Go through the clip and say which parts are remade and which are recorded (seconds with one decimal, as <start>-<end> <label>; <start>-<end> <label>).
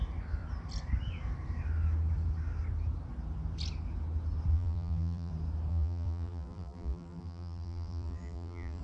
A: 0.0-4.5 recorded; 4.5-5.3 remade; 5.3-5.7 recorded; 5.7-8.8 remade